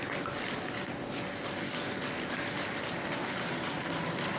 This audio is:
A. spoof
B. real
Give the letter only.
B